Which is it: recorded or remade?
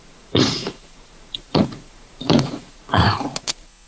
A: remade